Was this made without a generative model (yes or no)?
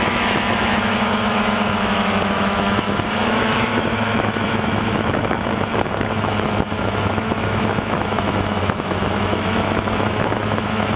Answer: no